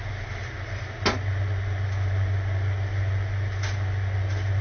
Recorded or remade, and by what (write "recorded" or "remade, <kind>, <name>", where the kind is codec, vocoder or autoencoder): recorded